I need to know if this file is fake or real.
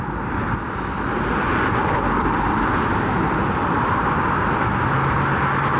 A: real